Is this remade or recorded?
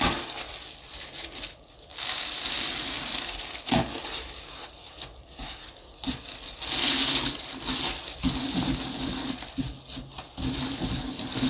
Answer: recorded